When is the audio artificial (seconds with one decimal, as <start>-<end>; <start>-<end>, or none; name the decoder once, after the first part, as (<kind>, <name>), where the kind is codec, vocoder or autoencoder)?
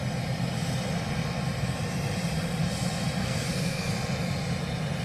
3.2-3.9 (codec, SNAC)